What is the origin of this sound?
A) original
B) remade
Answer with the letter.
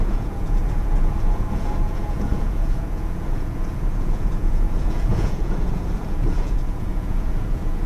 B